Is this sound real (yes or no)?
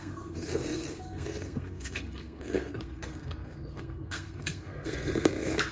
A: no